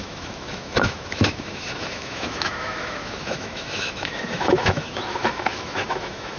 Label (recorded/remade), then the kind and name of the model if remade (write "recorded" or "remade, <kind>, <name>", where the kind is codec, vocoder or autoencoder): remade, autoencoder, DAC-VAE